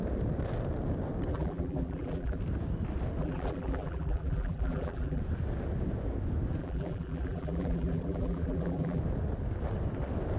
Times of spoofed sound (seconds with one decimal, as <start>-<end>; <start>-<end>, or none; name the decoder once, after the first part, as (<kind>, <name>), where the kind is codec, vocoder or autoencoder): 1.3-2.4 (vocoder, BigVGAN v2); 3.2-5.2; 6.6-9.0